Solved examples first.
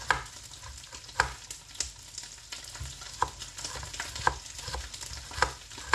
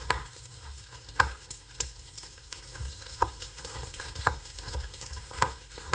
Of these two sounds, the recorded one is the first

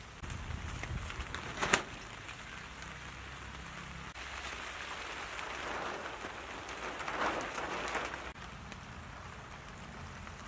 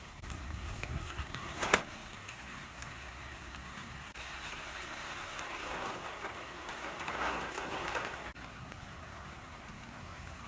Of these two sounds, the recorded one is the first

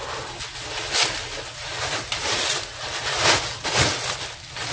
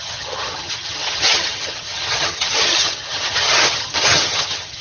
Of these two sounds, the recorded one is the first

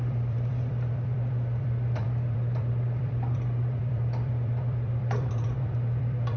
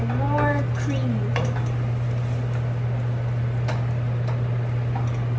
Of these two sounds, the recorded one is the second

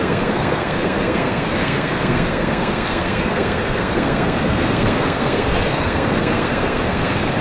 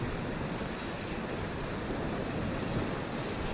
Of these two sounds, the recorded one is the second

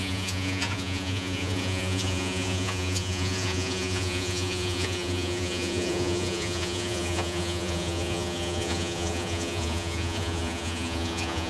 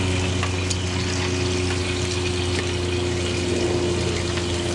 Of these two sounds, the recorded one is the second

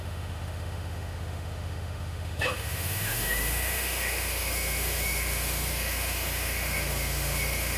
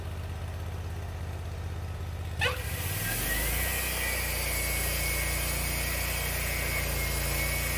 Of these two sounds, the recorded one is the second